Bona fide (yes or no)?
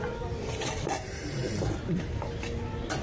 yes